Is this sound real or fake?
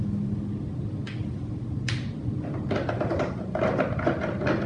real